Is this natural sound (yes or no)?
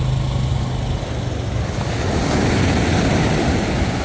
yes